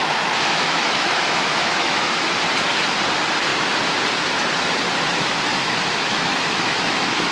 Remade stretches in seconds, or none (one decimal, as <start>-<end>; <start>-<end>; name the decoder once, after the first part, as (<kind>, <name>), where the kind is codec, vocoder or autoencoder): 0.0-2.2 (autoencoder, DAC-VAE); 5.5-7.3